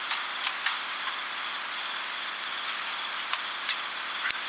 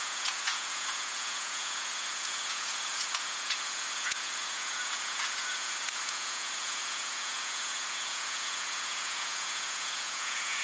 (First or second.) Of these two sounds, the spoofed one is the second